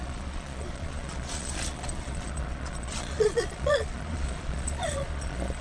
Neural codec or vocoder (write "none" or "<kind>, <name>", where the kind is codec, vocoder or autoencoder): vocoder, Vocos